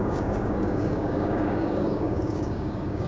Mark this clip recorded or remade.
remade